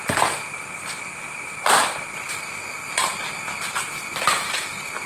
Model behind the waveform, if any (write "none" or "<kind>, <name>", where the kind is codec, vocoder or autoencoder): none